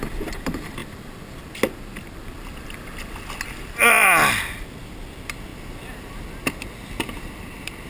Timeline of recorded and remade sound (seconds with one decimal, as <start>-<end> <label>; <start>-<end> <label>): 0.0-7.9 recorded